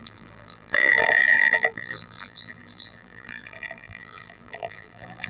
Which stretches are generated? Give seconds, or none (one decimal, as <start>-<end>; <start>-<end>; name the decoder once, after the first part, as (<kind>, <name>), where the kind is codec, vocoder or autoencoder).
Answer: 0.0-5.3 (vocoder, BigVGAN v2)